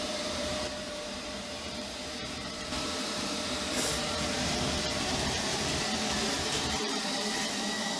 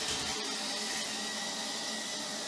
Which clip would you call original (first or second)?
second